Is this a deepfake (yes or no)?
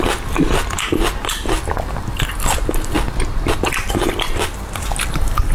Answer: no